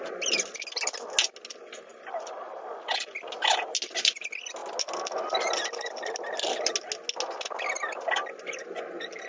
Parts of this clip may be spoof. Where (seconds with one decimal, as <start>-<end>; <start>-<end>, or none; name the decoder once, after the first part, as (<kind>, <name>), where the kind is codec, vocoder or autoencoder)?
1.9-3.0 (vocoder, BigVGAN v2)